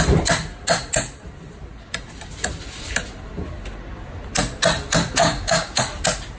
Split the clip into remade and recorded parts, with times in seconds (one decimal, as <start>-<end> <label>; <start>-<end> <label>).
0.0-5.2 recorded; 5.2-5.8 remade; 5.8-6.4 recorded